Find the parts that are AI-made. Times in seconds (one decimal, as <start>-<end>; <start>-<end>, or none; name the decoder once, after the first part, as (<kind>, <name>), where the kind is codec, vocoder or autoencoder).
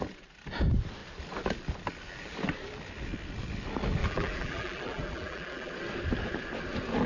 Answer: 4.0-5.7 (vocoder, BigVGAN v2)